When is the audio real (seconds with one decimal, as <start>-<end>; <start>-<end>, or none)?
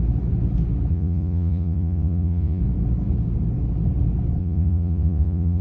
0.0-0.9; 2.6-4.4